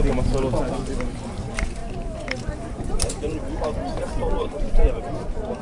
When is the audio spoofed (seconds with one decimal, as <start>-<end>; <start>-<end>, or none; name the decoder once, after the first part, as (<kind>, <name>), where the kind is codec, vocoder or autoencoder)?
1.8-5.6 (vocoder, BigVGAN v2)